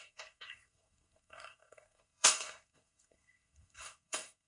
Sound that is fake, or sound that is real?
fake